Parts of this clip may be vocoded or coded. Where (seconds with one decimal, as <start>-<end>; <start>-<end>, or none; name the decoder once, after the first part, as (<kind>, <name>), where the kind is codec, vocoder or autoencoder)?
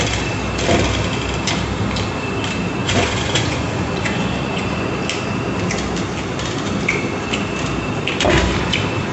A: 2.8-4.9 (vocoder, Vocos)